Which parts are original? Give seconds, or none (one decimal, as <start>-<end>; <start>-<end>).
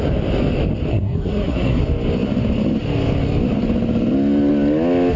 0.0-0.9; 1.8-5.2